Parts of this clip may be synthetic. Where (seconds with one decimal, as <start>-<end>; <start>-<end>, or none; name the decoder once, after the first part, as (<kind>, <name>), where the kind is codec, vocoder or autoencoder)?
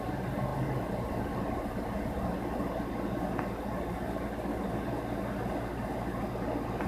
none